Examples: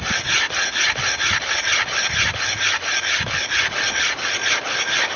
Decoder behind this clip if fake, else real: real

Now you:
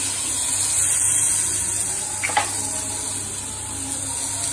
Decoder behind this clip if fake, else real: real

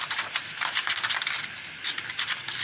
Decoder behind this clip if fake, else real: real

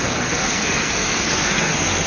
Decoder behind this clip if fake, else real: fake, codec, SNAC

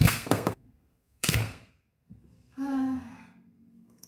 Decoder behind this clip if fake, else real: fake, codec, SNAC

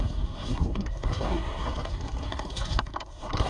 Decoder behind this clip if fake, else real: fake, codec, SNAC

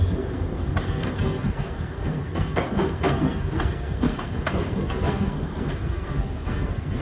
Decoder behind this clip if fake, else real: fake, codec, SNAC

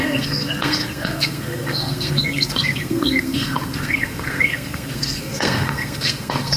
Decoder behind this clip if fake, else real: fake, codec, SNAC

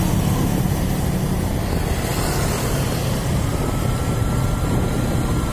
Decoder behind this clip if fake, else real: real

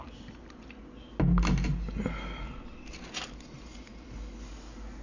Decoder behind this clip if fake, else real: real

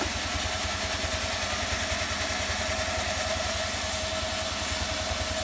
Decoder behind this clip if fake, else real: real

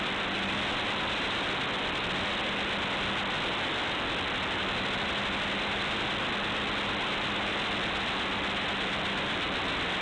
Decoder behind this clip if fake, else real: real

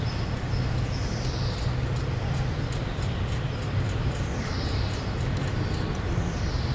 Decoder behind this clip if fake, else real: real